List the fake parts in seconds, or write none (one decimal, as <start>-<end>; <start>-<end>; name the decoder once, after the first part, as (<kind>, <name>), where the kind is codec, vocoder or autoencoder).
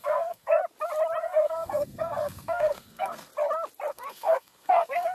0.0-0.6 (codec, SNAC); 1.2-3.3; 3.9-5.1